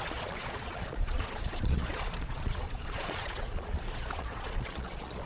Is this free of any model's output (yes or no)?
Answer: no